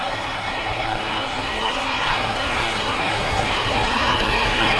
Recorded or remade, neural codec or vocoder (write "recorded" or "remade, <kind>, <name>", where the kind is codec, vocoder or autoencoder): remade, codec, SNAC